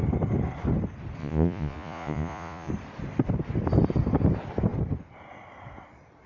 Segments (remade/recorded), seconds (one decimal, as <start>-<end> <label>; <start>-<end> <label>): 0.0-1.2 recorded; 1.2-2.7 remade; 2.7-6.3 recorded